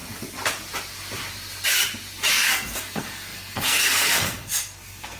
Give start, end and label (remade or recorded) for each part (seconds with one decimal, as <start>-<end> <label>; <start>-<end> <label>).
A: 0.0-2.3 recorded; 2.3-5.2 remade

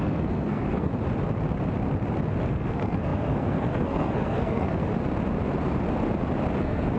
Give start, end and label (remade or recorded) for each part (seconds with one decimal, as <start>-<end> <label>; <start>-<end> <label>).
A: 0.0-0.9 remade; 0.9-2.5 recorded; 2.5-4.9 remade; 4.9-6.6 recorded; 6.6-7.0 remade